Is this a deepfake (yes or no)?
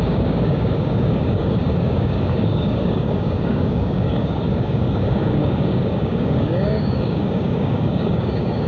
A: yes